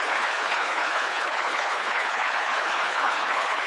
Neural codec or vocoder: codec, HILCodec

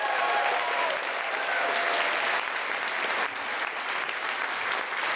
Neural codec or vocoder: none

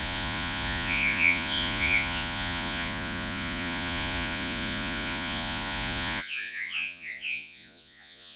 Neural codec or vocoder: vocoder, Vocos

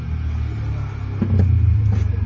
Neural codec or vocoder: none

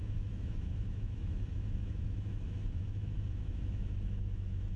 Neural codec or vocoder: autoencoder, DAC-VAE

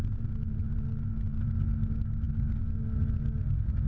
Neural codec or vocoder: none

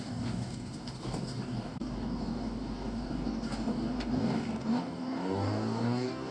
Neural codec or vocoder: codec, DAC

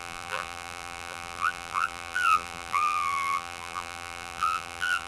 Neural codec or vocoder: vocoder, BigVGAN v2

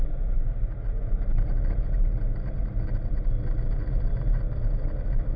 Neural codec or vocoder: none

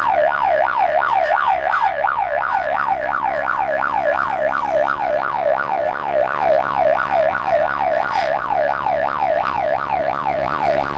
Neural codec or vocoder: vocoder, WaveNeXt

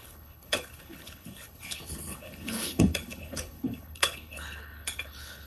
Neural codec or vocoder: codec, HILCodec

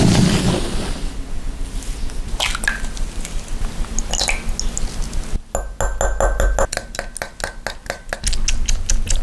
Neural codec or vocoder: none